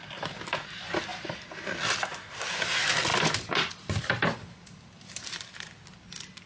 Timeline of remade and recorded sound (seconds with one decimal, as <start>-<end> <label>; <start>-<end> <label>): 0.0-3.1 recorded; 3.1-3.7 remade; 3.7-6.5 recorded